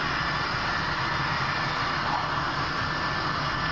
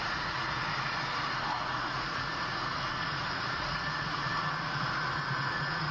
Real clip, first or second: first